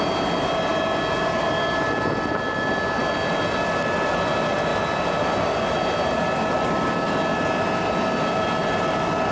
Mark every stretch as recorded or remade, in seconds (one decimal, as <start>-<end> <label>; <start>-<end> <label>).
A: 0.0-9.3 recorded